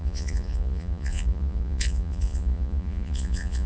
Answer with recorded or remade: remade